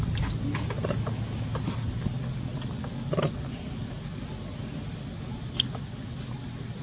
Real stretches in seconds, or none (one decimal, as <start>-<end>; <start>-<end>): 0.0-6.8